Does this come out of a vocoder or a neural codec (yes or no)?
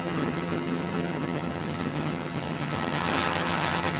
yes